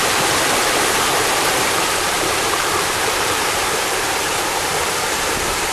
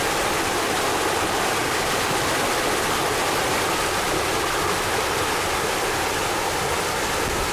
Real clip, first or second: second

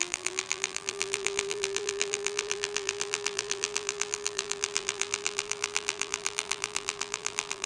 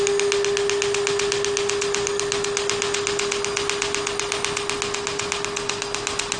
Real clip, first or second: second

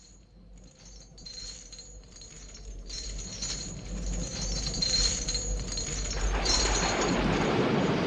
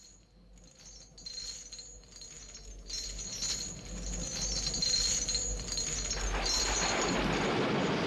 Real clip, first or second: second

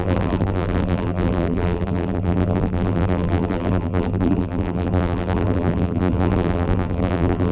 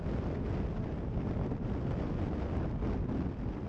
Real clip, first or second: second